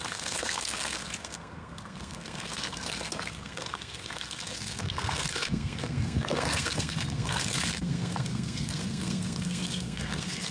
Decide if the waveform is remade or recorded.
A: remade